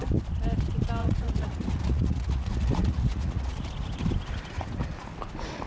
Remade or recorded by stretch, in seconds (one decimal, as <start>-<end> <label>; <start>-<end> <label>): 0.0-1.0 recorded; 1.0-3.7 remade; 3.7-5.7 recorded